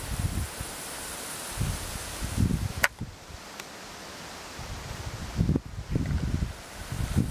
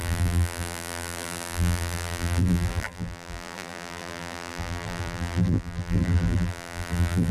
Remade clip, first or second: second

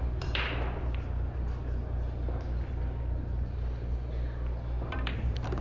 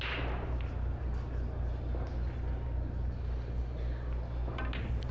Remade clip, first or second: first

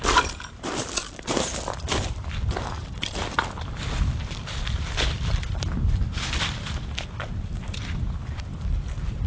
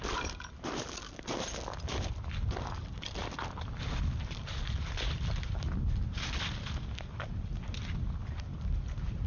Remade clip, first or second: first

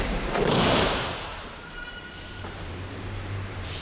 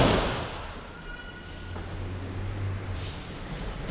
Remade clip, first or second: first